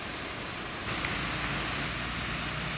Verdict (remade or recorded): recorded